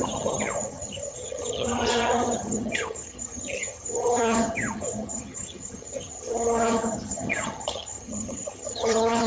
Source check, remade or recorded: remade